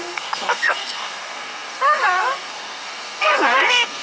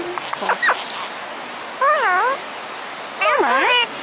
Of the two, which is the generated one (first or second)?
first